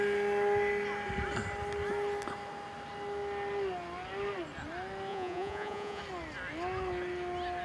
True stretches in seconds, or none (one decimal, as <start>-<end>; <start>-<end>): 0.0-5.1; 6.0-7.6